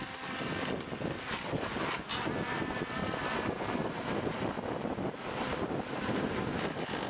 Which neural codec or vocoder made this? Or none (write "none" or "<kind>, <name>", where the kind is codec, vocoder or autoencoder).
none